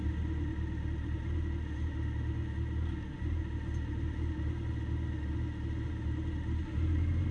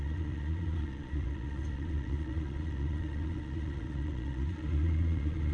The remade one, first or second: second